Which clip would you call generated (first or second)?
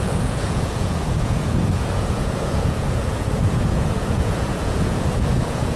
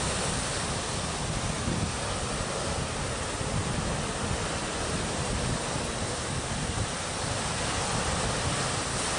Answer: first